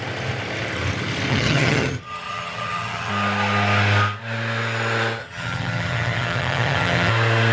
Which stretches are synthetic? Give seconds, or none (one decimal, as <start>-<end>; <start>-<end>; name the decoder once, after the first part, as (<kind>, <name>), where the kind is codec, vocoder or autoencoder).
1.3-3.1 (vocoder, HiFi-GAN); 5.2-7.1